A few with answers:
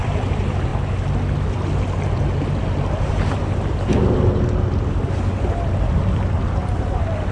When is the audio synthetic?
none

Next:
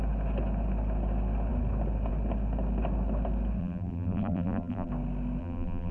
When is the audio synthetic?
3.6-4.9 (vocoder, BigVGAN v2); 5.4-5.9